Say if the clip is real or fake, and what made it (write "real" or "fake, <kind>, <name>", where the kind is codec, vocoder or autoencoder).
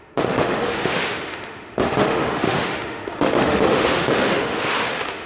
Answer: fake, autoencoder, DAC-VAE